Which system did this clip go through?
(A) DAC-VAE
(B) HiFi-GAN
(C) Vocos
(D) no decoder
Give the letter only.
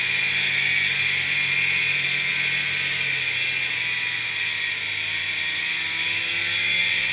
D